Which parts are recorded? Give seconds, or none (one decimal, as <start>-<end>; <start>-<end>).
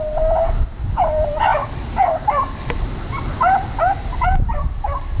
0.0-5.2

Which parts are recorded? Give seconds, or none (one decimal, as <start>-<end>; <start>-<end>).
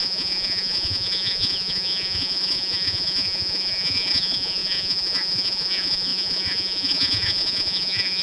none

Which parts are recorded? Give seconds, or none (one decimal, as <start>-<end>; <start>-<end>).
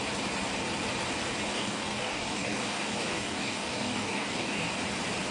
0.0-1.5; 4.7-5.3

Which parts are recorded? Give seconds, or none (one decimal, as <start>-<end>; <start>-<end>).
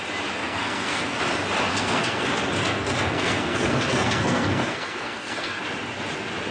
0.0-0.4; 1.2-1.7; 5.6-6.5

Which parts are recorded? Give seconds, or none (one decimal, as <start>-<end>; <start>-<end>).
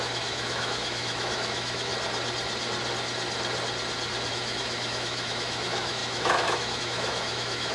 1.9-4.3